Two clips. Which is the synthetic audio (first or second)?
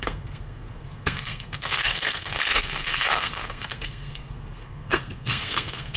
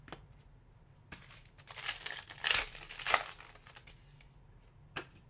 first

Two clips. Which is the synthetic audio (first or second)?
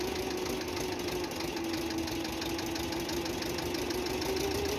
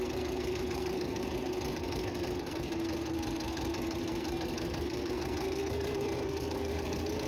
second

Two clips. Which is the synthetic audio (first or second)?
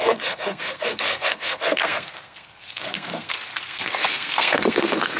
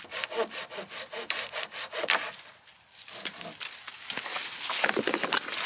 first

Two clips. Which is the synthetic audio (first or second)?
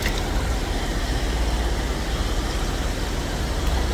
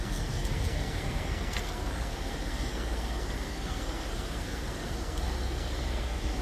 second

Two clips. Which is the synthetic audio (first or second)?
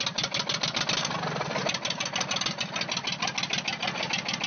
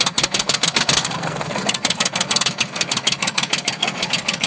second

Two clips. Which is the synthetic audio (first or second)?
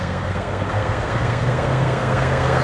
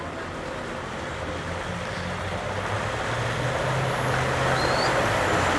first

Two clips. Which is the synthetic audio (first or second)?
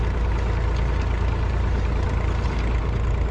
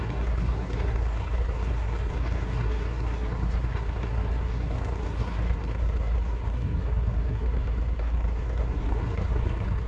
second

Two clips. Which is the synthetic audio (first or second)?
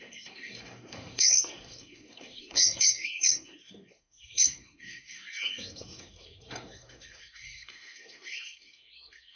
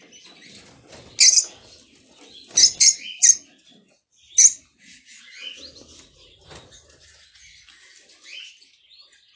first